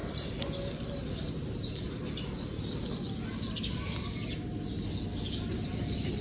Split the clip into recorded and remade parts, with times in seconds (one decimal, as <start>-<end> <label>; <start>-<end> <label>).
0.0-6.2 recorded